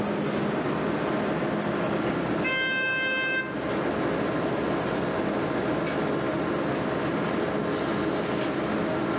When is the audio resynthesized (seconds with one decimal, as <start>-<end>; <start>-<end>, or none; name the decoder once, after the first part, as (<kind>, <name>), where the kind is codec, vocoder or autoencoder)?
none